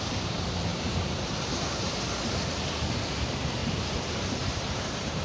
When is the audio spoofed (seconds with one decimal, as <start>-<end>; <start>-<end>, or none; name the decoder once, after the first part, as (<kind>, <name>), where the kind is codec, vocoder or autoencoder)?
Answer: 0.7-2.0 (vocoder, BigVGAN v2); 3.6-5.2